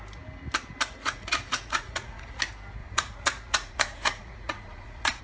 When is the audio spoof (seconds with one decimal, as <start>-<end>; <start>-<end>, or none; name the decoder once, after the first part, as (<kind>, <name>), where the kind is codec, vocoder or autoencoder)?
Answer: 1.0-2.4 (vocoder, Vocos); 2.8-5.2